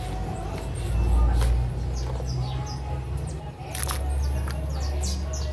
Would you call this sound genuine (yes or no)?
yes